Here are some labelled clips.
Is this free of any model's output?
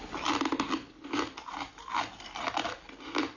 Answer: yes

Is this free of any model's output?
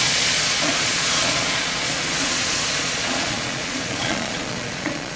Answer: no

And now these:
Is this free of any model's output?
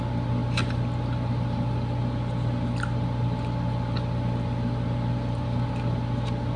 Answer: yes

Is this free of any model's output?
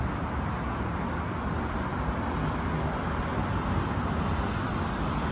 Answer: yes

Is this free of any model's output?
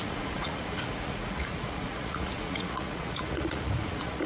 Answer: no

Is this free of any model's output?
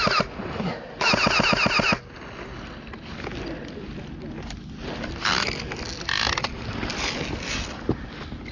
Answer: yes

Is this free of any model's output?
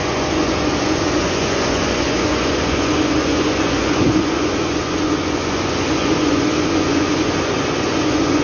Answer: no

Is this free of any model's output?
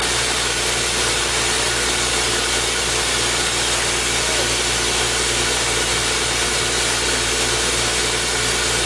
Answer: yes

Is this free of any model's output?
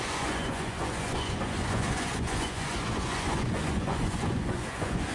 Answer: no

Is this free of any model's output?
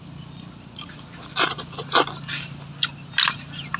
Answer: yes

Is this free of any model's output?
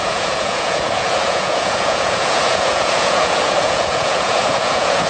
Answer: no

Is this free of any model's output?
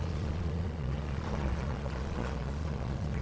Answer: no